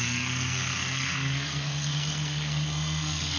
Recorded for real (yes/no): no